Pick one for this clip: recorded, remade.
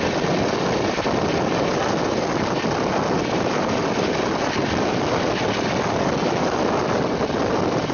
recorded